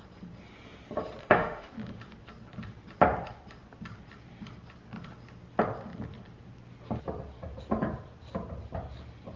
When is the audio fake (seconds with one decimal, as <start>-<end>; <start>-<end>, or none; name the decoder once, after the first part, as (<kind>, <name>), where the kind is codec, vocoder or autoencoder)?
1.2-1.7 (autoencoder, DAC-VAE)